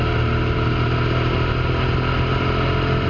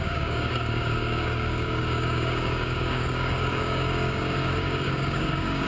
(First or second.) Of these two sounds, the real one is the first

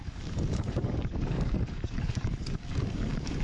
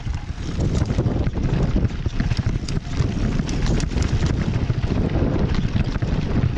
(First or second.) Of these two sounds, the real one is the second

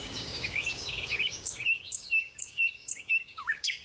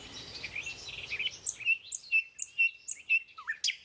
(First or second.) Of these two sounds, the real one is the second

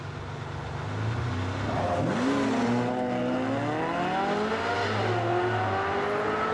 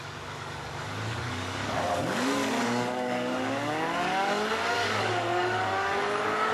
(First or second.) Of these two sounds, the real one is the first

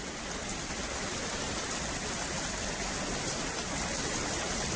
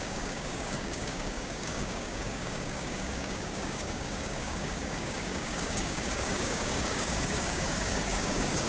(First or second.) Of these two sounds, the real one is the first